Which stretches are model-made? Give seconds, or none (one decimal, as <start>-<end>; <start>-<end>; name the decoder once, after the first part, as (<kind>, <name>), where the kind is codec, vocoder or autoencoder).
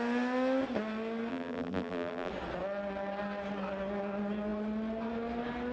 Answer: 1.3-2.3 (vocoder, BigVGAN v2)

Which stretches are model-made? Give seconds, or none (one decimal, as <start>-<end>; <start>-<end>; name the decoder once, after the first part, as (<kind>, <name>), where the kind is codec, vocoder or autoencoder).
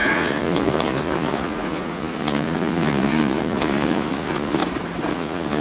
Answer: 0.0-4.6 (vocoder, Vocos); 5.1-5.6